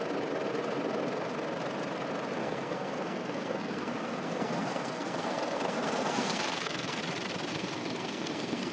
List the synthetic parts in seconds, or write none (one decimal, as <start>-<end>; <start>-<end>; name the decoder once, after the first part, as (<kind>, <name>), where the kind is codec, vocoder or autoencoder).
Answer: 2.4-7.0 (codec, SNAC); 7.5-8.7